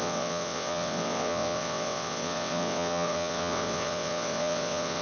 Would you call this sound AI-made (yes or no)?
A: yes